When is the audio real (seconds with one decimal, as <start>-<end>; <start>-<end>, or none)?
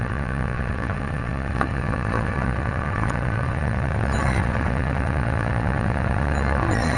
none